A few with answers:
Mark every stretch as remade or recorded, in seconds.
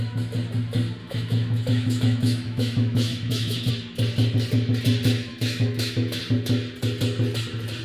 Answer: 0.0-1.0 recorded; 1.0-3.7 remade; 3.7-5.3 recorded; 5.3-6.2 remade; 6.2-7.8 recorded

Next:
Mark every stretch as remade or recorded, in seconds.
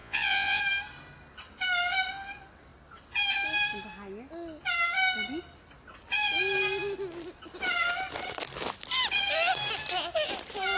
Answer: 0.0-0.6 remade; 0.6-10.8 recorded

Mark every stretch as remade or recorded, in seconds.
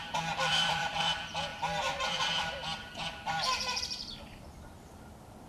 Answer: 0.0-5.5 remade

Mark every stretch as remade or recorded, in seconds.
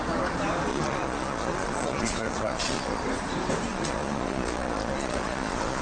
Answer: 0.0-0.7 recorded; 0.7-3.0 remade; 3.0-3.7 recorded; 3.7-5.8 remade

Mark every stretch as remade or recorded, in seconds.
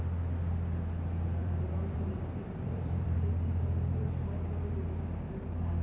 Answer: 0.0-1.4 recorded; 1.4-3.3 remade; 3.3-5.8 recorded